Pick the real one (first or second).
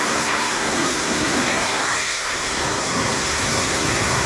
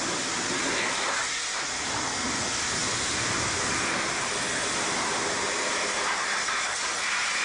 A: second